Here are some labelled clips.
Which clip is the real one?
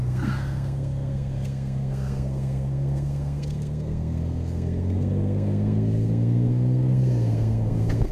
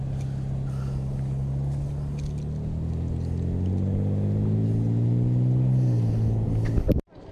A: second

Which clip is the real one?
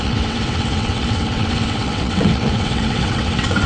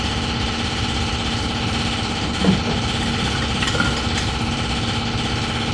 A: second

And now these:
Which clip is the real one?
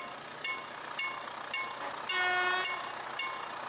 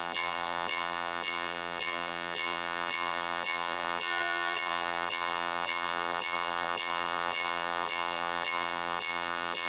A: first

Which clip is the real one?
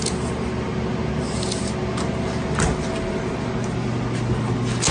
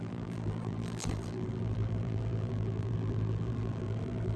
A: first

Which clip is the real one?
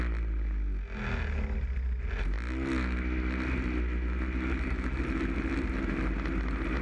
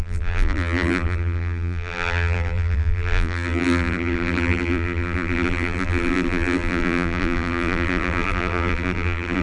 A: first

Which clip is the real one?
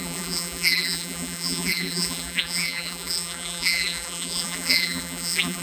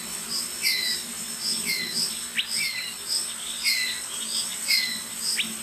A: second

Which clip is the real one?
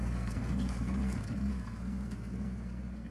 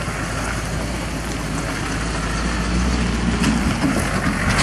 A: second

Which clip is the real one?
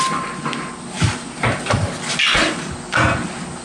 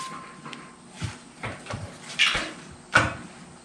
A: first